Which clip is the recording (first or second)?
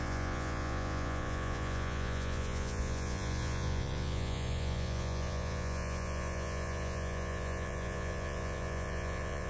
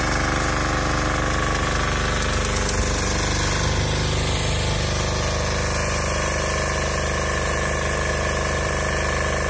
second